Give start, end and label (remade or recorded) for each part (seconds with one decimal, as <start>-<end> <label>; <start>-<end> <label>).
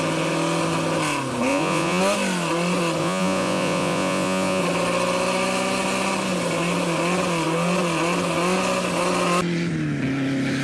0.0-1.5 recorded; 1.5-2.0 remade; 2.0-3.0 recorded; 3.0-4.6 remade; 4.6-10.6 recorded